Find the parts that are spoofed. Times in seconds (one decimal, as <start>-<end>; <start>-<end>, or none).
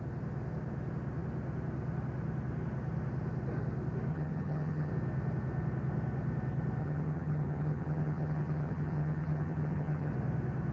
4.1-4.9; 6.8-10.1